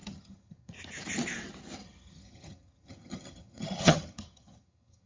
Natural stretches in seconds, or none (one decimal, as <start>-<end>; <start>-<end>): 0.7-1.8